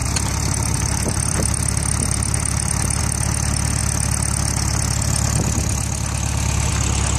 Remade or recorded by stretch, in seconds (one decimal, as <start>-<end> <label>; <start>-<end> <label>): 0.0-3.0 remade; 3.0-7.2 recorded

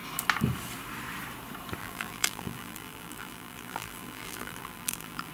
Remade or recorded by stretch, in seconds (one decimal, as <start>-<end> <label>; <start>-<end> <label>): 0.0-1.8 recorded; 1.8-5.3 remade